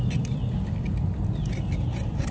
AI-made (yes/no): no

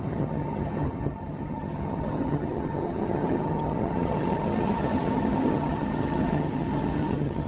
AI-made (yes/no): yes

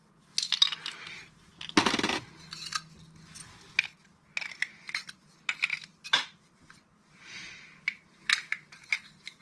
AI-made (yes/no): no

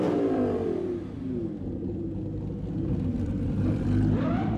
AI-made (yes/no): yes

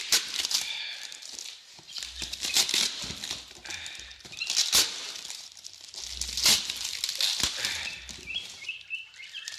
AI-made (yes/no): no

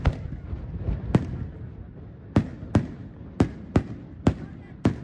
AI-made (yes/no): no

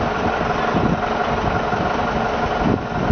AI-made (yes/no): no